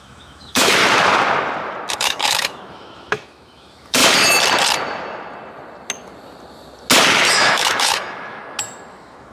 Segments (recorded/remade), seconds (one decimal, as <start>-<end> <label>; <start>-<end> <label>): 0.0-0.8 remade; 0.8-1.9 recorded; 1.9-4.0 remade; 4.0-7.3 recorded; 7.3-8.4 remade; 8.4-8.9 recorded; 8.9-9.3 remade